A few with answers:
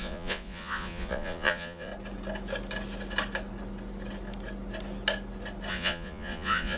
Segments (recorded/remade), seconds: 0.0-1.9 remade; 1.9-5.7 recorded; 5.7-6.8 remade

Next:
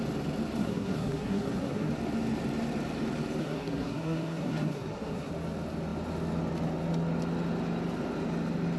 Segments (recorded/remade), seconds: 0.0-0.6 recorded; 0.6-1.9 remade; 1.9-3.4 recorded; 3.4-5.3 remade; 5.3-8.8 recorded

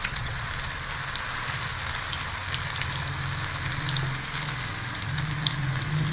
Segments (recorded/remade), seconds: 0.0-0.5 remade; 0.5-6.1 recorded